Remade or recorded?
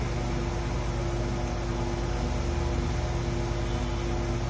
recorded